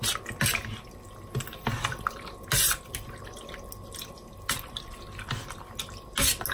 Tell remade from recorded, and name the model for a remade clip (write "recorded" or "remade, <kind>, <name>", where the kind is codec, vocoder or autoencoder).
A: recorded